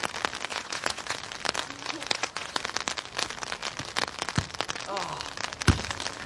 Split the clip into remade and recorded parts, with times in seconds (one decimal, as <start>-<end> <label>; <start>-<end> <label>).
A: 0.0-0.5 recorded; 0.5-1.2 remade; 1.2-1.8 recorded; 1.8-2.6 remade; 2.6-6.3 recorded